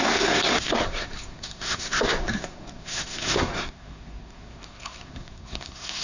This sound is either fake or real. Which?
fake